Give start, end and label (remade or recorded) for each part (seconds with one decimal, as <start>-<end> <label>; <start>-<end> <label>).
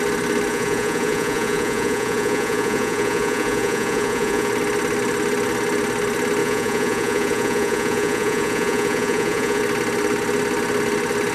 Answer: 0.0-0.5 recorded; 0.5-4.5 remade; 4.5-6.4 recorded; 6.4-9.6 remade; 9.6-11.3 recorded